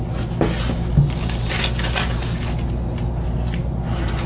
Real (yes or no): yes